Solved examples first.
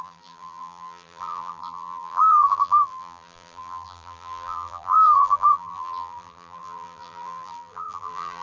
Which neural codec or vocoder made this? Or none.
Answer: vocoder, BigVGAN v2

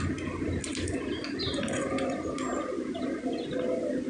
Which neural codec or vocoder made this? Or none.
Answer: none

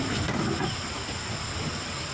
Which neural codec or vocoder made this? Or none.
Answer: none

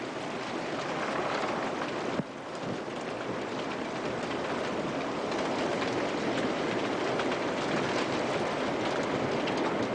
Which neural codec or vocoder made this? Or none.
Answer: none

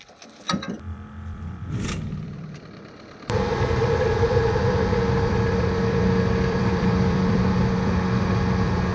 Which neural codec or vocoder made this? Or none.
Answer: vocoder, BigVGAN v2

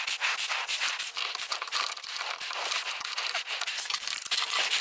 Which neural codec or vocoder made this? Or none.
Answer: none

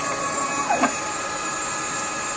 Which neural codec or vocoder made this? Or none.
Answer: vocoder, BigVGAN v2